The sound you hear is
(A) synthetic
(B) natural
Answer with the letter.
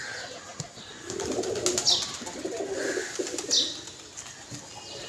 B